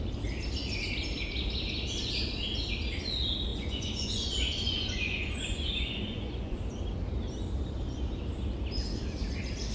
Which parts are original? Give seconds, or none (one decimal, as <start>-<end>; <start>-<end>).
0.0-3.5; 6.6-9.7